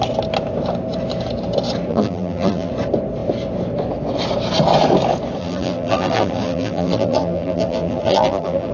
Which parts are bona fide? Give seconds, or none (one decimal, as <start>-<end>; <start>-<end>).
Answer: 0.0-1.9; 2.7-5.4